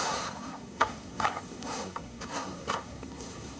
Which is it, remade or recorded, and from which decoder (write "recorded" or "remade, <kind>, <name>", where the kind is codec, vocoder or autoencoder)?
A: remade, codec, SNAC